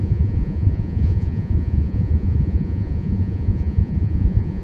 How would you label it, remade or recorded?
remade